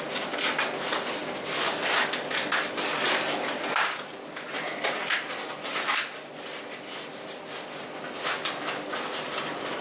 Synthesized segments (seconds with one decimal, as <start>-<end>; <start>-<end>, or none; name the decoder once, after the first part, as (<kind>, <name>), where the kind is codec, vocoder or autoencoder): none